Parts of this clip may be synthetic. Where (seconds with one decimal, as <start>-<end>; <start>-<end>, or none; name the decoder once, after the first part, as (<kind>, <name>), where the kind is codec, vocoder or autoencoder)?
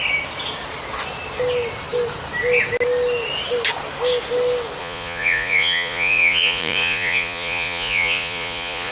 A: 4.8-8.9 (vocoder, Vocos)